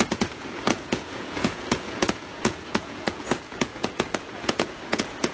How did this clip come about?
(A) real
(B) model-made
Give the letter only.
B